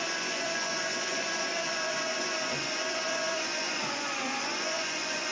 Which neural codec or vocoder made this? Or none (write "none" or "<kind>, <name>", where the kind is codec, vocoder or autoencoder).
vocoder, Vocos